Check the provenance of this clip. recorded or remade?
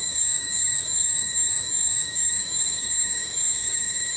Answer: remade